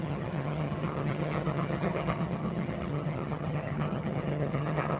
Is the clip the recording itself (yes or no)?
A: no